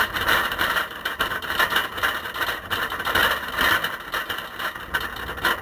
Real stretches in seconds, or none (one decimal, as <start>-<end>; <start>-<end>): 1.8-2.5; 3.2-5.6